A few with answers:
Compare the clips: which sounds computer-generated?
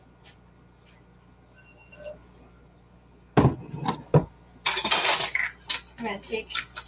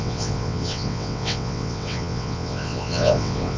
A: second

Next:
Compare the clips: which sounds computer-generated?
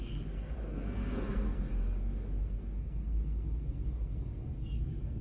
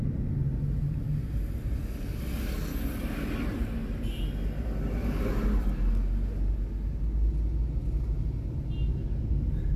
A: first